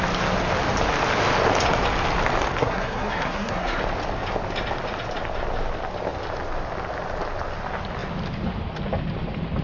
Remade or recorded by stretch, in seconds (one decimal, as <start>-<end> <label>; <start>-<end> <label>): 0.0-2.6 recorded; 2.6-3.8 remade; 3.8-9.6 recorded